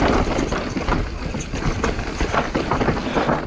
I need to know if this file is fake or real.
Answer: real